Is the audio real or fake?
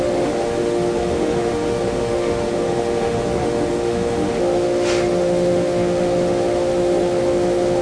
fake